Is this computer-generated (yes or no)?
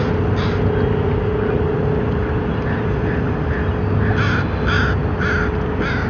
no